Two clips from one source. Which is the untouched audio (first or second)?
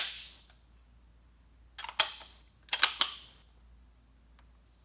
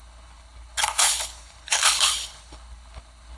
first